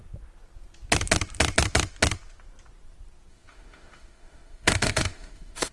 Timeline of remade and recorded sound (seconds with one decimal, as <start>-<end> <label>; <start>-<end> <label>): 0.0-3.3 recorded; 3.3-5.7 remade